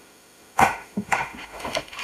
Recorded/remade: remade